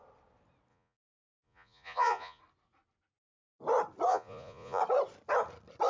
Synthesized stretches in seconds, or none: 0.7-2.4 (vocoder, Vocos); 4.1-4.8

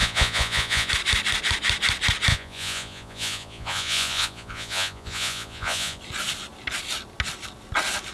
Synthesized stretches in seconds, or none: 0.0-0.9 (vocoder, Vocos); 2.3-6.0

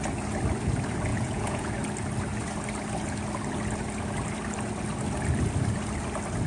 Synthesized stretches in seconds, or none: 1.1-1.7 (vocoder, Vocos)

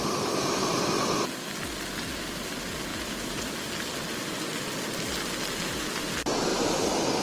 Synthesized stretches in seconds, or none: 2.9-3.4 (vocoder, Vocos)

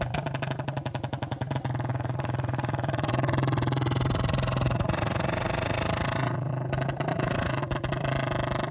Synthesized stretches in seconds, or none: 1.9-6.5 (vocoder, Vocos); 7.1-7.6

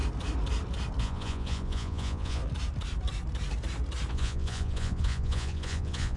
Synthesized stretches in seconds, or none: 1.0-2.4 (vocoder, Vocos); 4.1-6.2

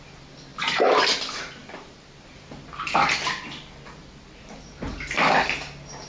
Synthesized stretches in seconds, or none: none

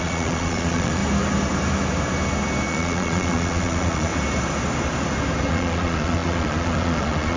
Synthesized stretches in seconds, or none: 0.0-1.0 (vocoder, Vocos); 2.7-4.1; 5.5-7.4